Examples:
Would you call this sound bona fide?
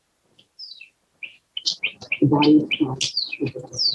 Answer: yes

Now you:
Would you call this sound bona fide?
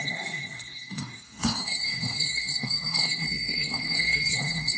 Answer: no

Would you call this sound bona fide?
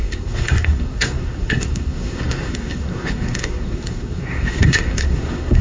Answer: no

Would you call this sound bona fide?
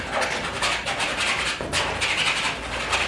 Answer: yes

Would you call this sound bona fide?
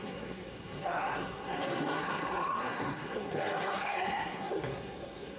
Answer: no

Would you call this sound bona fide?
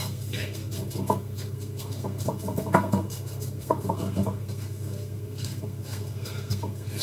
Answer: no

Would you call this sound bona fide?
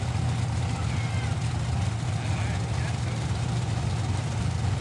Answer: yes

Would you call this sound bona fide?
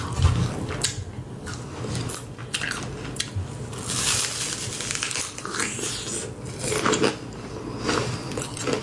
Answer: yes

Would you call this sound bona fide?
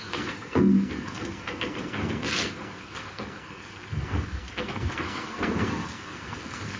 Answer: no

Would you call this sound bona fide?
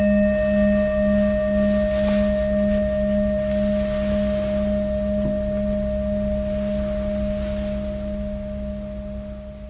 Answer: yes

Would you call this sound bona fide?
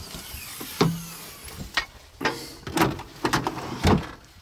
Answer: yes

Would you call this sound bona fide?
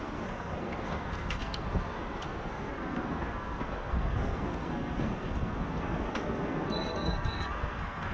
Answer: no